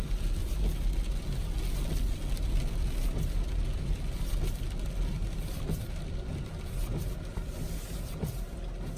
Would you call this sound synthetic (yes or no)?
no